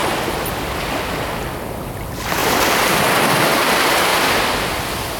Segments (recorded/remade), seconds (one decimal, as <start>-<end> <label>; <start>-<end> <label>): 0.0-0.9 remade; 0.9-2.4 recorded; 2.4-3.3 remade; 3.3-4.1 recorded; 4.1-5.2 remade